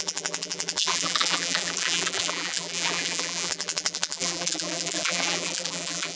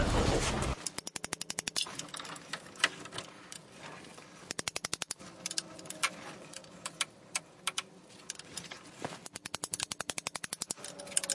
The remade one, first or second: first